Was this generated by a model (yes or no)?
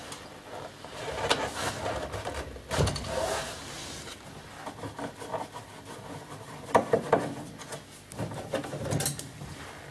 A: no